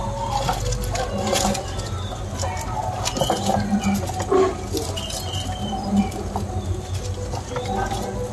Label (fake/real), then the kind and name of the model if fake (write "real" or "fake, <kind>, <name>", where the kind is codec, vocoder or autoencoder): real